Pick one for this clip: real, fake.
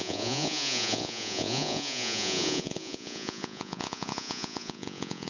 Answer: fake